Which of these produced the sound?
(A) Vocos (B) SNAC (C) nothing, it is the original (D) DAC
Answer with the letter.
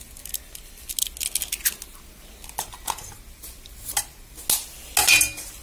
C